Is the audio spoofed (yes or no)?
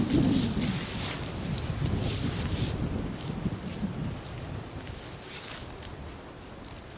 no